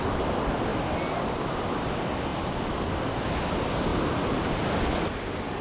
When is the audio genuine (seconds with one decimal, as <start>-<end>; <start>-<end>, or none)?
0.0-5.6